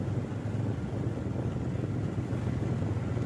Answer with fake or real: real